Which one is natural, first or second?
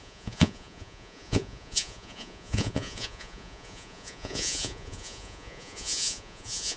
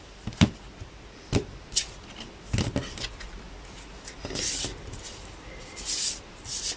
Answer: second